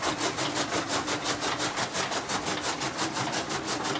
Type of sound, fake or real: real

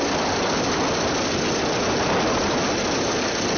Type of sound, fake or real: real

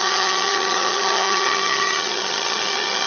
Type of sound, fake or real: fake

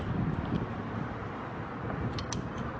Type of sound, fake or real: real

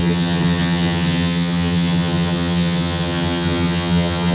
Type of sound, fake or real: fake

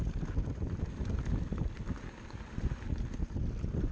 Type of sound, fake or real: real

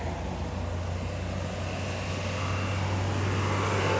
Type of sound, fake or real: real